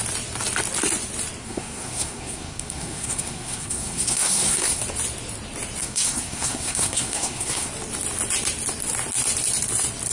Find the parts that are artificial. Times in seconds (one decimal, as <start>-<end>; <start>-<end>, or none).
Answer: 1.4-4.8; 5.8-7.7